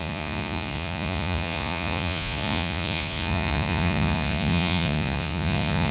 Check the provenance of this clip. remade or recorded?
remade